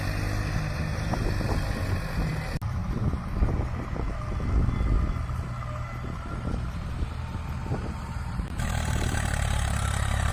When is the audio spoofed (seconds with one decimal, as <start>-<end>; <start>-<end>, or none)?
2.8-3.4; 7.6-10.3